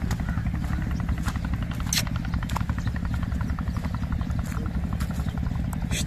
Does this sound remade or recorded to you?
recorded